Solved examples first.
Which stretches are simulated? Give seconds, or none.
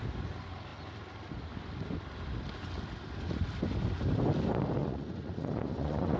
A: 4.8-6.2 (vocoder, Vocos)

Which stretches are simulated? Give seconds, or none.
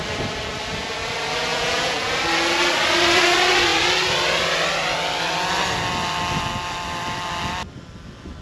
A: 1.5-2.1 (vocoder, Vocos)